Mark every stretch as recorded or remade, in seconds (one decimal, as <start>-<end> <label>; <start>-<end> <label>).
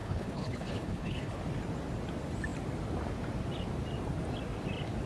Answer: 0.0-1.4 remade; 1.4-5.1 recorded